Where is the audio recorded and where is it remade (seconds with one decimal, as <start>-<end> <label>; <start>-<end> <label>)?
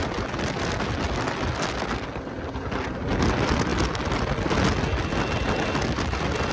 0.0-6.5 recorded